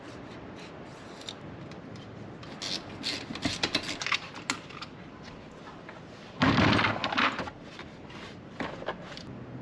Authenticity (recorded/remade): recorded